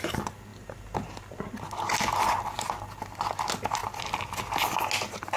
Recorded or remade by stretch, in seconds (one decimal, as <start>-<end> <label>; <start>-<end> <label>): 0.0-5.4 recorded